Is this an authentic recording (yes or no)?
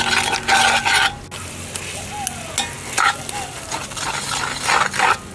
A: yes